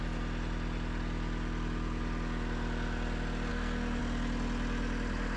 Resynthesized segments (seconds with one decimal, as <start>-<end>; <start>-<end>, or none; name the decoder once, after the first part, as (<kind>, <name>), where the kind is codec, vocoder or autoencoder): 3.5-4.0 (codec, SNAC)